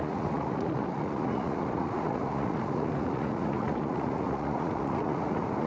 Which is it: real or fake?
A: fake